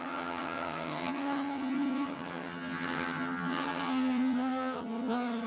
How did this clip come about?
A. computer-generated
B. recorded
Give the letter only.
A